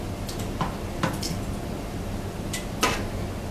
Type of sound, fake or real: real